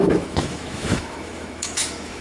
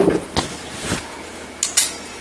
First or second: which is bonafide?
second